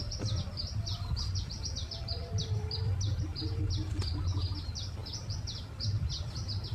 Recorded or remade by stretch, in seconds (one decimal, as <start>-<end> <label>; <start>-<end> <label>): 0.0-1.8 recorded; 1.8-2.7 remade; 2.7-3.3 recorded; 3.3-3.9 remade; 3.9-6.7 recorded